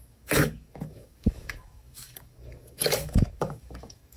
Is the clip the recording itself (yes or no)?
no